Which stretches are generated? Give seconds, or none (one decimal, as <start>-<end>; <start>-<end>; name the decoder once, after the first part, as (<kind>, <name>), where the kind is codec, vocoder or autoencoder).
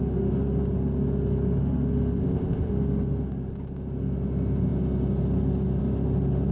2.2-2.7 (codec, ZipCodec)